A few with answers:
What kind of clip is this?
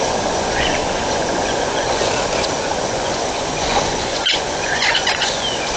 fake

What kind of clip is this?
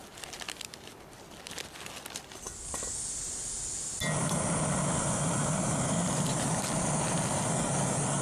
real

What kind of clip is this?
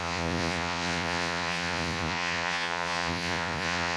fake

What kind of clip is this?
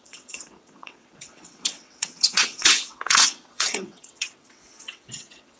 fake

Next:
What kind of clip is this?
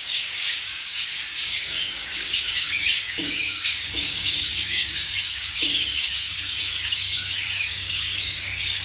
fake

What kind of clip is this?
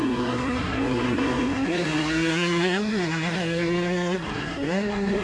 fake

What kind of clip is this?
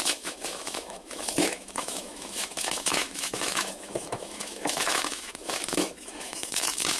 fake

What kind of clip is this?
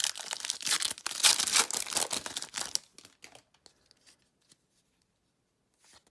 real